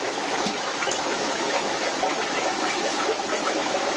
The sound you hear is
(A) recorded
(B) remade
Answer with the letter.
B